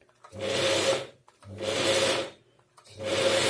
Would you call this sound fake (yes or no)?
no